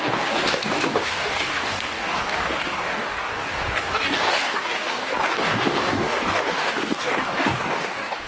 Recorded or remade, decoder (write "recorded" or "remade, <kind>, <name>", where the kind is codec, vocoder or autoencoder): remade, codec, DAC